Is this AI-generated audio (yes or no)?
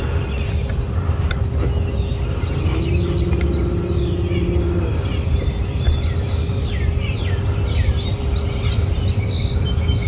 no